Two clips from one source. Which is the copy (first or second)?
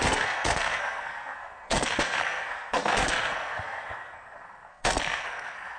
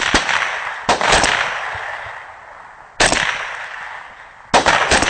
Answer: first